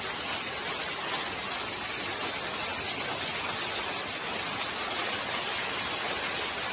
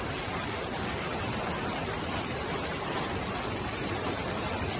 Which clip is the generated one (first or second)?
second